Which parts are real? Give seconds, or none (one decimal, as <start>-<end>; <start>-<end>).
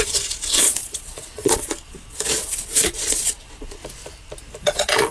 3.8-4.6